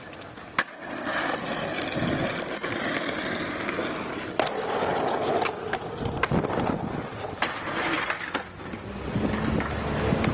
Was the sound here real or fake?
real